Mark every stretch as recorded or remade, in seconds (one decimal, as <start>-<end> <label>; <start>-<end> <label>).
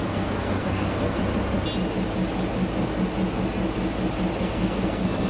0.0-1.2 remade; 1.2-4.4 recorded; 4.4-5.3 remade